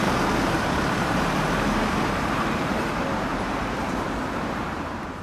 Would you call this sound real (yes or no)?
no